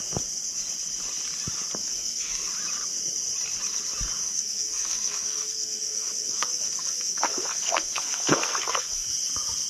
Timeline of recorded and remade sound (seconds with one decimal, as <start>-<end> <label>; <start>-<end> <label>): 0.0-1.8 recorded; 1.8-2.5 remade; 2.5-4.2 recorded; 4.2-9.1 remade; 9.1-9.7 recorded